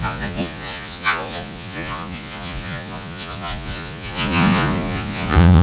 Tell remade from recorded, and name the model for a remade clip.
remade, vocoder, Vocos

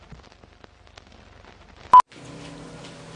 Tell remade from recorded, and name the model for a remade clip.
recorded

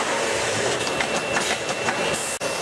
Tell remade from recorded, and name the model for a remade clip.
recorded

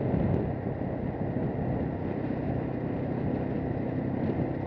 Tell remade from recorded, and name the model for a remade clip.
recorded